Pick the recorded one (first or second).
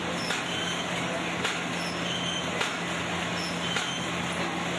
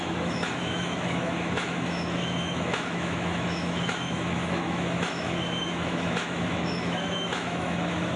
first